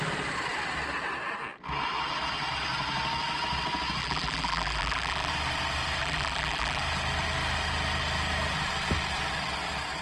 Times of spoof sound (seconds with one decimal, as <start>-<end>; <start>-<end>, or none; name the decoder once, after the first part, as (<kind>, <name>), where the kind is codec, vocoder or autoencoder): 4.0-5.3 (vocoder, BigVGAN v2); 6.0-6.8